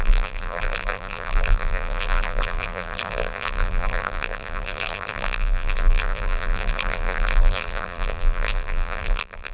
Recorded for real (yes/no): no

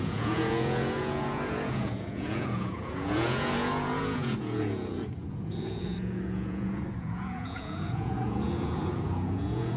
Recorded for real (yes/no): no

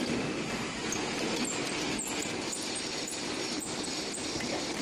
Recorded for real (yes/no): yes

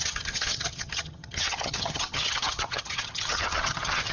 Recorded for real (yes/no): no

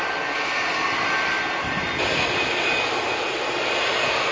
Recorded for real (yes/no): yes